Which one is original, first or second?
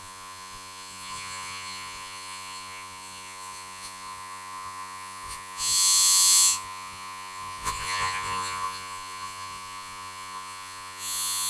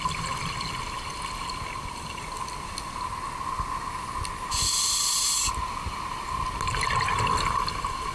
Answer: second